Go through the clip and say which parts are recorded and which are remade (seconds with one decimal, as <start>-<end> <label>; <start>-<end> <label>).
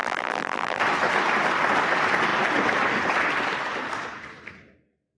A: 0.0-0.8 remade; 0.8-5.2 recorded